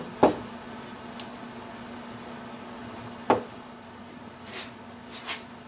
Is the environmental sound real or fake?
real